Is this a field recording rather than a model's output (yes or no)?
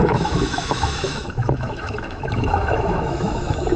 no